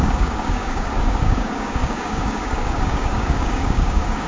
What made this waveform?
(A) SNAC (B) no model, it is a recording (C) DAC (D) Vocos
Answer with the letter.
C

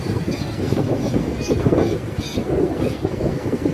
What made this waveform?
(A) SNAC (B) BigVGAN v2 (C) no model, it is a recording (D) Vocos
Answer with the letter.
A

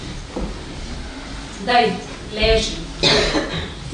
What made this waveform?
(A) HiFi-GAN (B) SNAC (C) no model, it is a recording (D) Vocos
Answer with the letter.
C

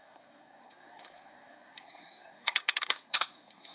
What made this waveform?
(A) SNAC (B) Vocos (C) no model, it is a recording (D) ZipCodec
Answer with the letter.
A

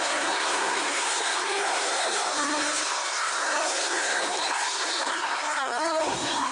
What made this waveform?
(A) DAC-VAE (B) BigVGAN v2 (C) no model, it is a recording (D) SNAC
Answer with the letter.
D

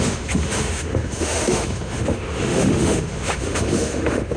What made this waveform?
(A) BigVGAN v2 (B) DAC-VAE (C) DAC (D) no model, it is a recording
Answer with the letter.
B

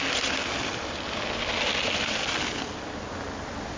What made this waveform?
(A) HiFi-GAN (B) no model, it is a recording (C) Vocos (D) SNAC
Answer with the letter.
B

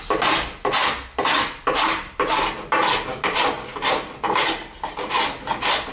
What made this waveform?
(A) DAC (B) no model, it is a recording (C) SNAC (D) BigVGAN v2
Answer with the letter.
B